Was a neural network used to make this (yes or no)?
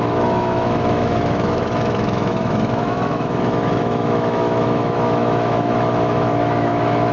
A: yes